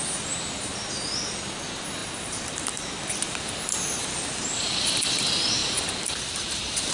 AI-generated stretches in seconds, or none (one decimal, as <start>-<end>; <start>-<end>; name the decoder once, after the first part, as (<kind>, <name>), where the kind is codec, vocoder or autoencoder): 2.0-2.9 (vocoder, BigVGAN v2); 5.6-6.9